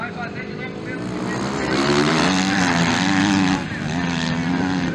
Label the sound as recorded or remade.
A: recorded